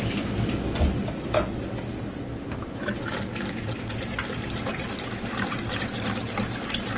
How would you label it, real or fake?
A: real